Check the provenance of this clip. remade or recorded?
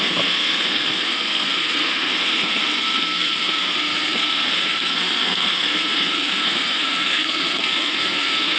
remade